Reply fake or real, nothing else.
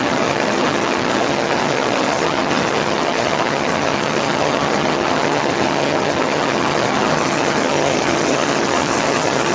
fake